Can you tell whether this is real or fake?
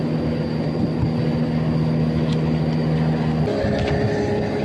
real